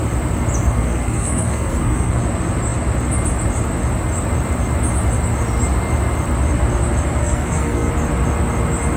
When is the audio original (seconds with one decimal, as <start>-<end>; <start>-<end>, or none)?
0.0-0.6; 2.2-7.2; 7.9-9.0